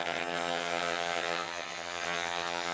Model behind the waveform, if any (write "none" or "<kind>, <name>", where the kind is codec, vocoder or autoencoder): vocoder, HiFi-GAN